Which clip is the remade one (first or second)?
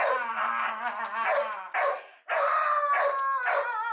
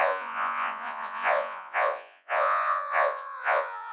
second